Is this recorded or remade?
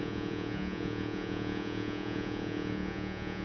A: remade